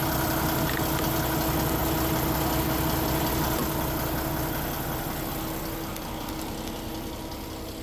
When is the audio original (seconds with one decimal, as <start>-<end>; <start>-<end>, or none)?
0.0-7.8